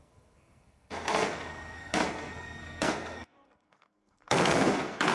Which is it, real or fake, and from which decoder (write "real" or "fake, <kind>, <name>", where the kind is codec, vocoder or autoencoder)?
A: fake, codec, SNAC